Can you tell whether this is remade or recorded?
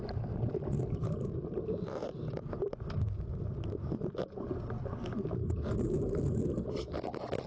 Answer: recorded